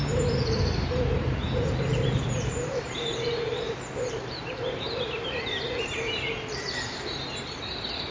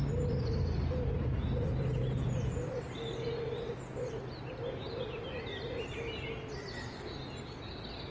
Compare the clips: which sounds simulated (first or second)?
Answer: first